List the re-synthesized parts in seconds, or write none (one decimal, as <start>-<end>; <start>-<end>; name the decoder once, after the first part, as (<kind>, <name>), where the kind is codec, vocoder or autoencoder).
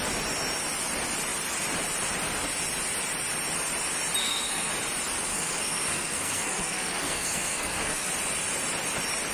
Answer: 4.2-4.7 (codec, SNAC); 5.3-8.1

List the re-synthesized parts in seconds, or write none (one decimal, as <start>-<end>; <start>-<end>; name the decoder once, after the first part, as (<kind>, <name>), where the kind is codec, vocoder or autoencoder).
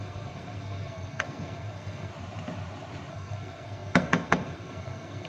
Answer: 0.0-2.1 (codec, SNAC); 3.1-5.3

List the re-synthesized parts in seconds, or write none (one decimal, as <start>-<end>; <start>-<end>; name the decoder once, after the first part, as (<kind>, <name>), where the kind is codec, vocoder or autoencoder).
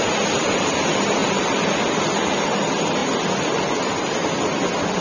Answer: none